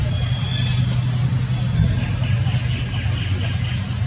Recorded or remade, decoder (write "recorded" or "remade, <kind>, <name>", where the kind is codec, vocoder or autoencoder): recorded